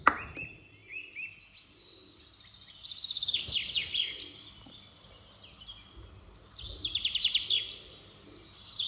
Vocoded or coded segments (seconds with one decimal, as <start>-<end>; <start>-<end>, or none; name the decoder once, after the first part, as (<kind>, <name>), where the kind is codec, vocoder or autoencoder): none